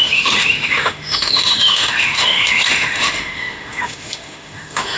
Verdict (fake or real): fake